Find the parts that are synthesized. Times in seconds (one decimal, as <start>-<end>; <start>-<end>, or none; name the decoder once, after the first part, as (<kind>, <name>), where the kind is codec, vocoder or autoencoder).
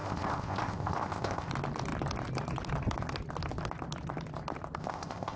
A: 0.0-1.5 (codec, ZipCodec); 4.8-5.4